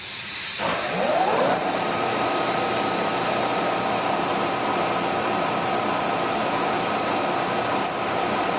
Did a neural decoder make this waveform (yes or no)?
yes